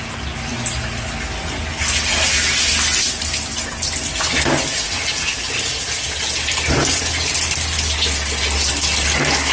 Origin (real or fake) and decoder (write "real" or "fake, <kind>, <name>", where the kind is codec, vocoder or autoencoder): real